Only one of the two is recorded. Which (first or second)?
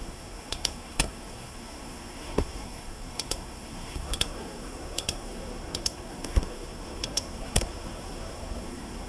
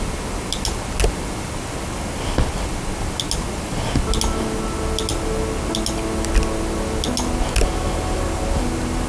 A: second